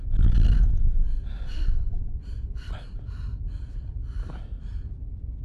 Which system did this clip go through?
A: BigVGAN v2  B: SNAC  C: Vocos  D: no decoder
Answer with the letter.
D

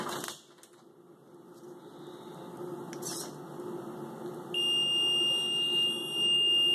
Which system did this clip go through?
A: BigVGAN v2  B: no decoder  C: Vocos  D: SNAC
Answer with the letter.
B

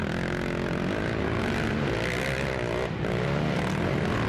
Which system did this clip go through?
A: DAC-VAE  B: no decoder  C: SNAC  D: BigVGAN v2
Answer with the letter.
B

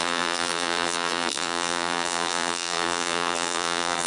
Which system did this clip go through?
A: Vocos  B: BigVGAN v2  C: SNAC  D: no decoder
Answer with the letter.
B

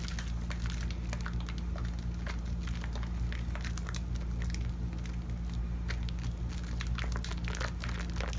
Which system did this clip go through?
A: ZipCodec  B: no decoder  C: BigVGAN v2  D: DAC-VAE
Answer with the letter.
B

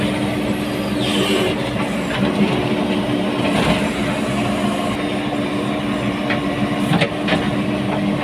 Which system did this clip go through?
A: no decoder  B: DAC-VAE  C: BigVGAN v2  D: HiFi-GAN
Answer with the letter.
A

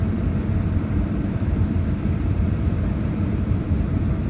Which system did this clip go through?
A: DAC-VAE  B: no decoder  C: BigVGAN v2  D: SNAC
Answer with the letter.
C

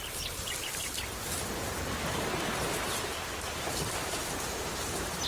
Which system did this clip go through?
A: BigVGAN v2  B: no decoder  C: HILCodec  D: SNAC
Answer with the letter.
A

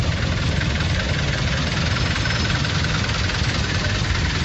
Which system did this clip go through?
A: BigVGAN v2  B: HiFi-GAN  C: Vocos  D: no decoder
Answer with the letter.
D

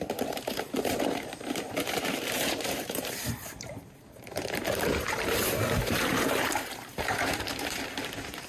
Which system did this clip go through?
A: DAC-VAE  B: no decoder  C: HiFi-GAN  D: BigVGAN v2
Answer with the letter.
D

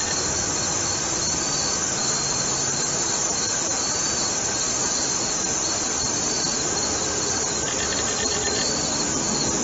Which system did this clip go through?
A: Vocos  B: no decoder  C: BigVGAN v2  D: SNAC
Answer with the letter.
B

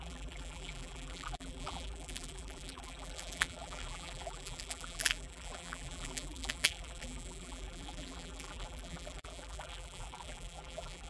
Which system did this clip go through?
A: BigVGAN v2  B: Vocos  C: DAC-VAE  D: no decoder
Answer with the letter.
A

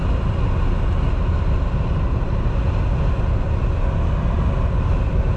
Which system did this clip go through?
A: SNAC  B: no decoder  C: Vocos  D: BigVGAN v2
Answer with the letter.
B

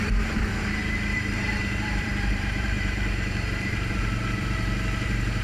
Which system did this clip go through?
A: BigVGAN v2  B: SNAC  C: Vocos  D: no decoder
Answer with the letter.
A